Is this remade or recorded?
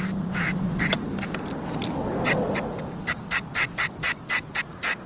recorded